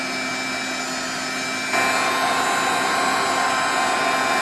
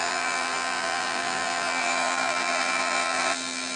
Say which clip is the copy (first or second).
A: second